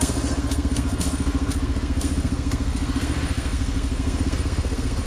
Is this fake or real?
fake